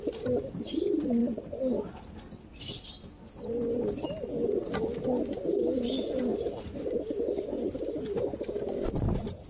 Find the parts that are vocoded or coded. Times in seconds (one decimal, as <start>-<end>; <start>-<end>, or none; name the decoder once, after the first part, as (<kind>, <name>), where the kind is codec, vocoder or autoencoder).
6.3-7.1 (vocoder, BigVGAN v2)